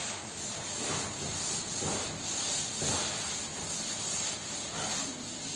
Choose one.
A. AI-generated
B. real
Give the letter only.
B